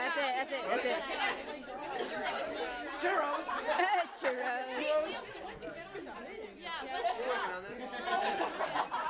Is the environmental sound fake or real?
real